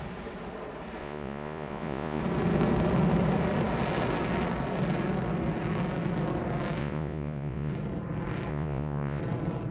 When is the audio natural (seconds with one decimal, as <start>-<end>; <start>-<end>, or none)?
0.0-1.0; 2.2-6.8; 7.7-8.5; 9.2-9.7

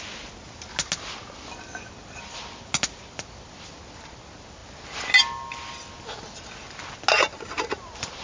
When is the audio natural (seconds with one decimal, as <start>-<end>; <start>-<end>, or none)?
0.0-8.2